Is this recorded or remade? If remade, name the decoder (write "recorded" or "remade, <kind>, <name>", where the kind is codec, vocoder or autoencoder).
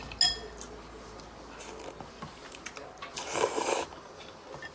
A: recorded